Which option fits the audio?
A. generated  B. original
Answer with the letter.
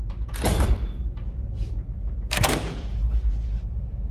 A